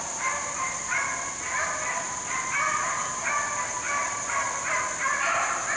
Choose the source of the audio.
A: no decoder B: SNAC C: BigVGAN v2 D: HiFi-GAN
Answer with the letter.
A